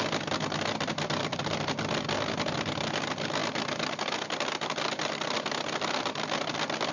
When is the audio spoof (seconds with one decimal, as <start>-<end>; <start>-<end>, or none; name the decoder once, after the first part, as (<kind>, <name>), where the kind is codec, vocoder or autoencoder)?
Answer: none